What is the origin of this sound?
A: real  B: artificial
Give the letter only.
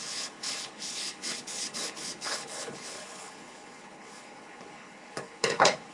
B